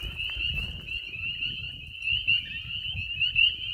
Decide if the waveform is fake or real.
real